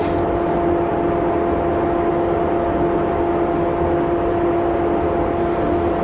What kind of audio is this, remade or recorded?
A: recorded